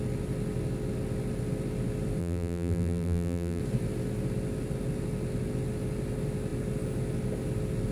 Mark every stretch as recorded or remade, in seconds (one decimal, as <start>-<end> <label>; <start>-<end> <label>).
0.0-2.2 recorded; 2.2-3.6 remade; 3.6-7.9 recorded